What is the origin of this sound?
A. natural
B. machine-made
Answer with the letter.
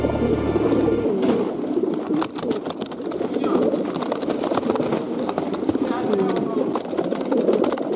A